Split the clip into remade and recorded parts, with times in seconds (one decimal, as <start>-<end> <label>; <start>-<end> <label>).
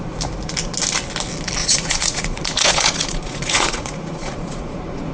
0.0-1.6 recorded; 1.6-5.1 remade